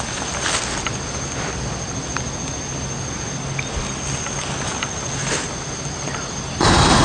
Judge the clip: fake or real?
real